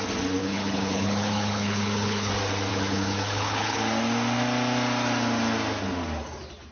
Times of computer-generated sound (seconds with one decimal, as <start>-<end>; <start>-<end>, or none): 0.4-2.3; 2.7-3.8